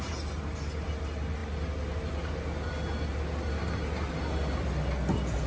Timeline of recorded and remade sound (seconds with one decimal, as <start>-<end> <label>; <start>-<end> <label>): 0.0-5.5 recorded